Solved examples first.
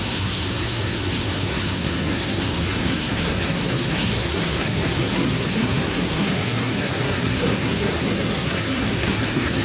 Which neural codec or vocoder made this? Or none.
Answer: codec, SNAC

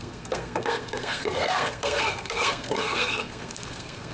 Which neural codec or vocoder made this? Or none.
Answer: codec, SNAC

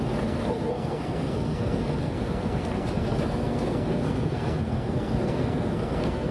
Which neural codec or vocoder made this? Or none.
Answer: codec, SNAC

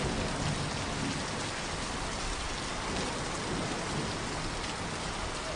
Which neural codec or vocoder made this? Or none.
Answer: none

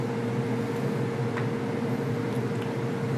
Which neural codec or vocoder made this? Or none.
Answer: none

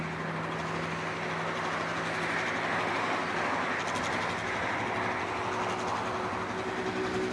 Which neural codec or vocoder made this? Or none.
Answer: none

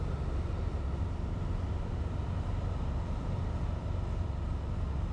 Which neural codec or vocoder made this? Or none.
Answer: none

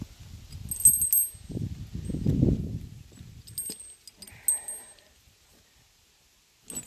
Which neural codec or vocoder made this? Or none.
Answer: none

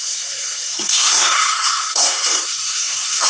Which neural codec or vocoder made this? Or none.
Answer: codec, SNAC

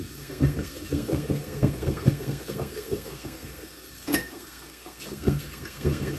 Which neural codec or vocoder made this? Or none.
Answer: codec, SNAC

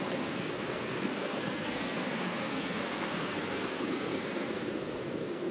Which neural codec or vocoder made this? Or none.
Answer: codec, SNAC